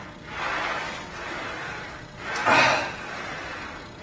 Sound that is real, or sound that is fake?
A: real